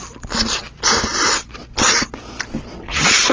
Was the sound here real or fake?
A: real